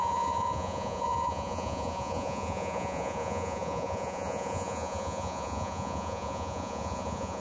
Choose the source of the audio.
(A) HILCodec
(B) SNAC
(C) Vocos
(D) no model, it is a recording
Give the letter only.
C